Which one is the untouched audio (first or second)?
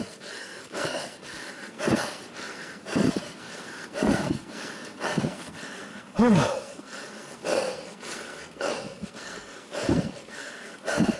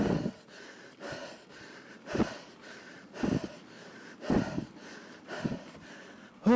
second